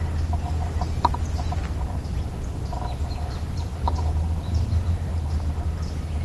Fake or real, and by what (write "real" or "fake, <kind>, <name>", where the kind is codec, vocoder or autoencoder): real